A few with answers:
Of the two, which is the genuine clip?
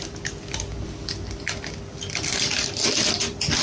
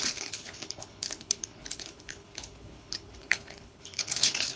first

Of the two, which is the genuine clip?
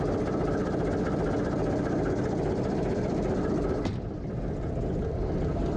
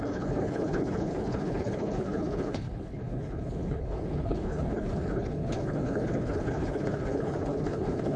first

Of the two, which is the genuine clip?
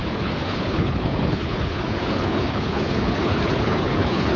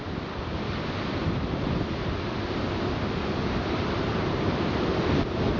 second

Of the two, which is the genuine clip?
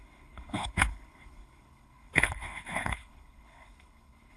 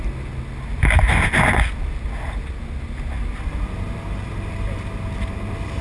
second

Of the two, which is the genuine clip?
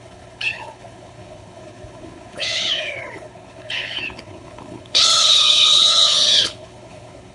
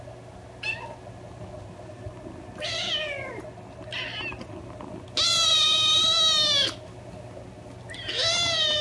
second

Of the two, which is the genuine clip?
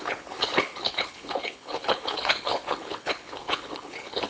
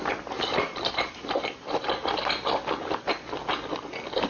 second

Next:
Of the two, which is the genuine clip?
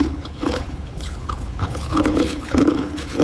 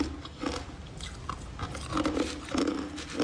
second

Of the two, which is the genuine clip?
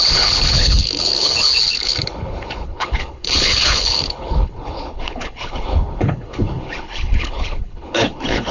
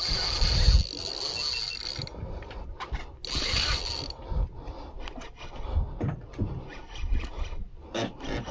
second